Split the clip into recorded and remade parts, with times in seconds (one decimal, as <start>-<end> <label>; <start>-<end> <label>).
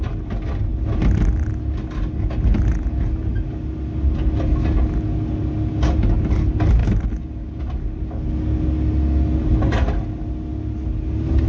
0.0-6.8 recorded; 6.8-7.6 remade; 7.6-11.5 recorded